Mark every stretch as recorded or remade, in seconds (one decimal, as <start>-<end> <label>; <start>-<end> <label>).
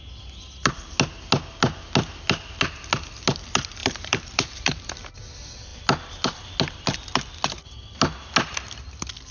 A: 0.0-3.8 recorded; 3.8-5.2 remade; 5.2-9.3 recorded